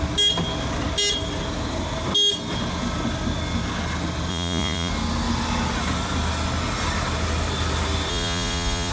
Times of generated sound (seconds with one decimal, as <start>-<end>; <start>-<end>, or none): 4.3-4.9; 8.1-8.9